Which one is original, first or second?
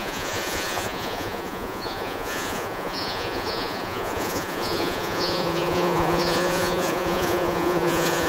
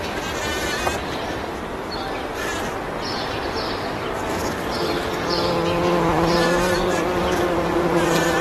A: second